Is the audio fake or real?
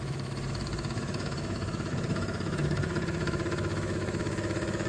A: fake